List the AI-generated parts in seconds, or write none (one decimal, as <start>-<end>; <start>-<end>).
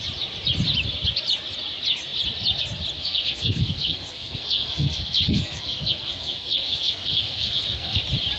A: 3.0-8.0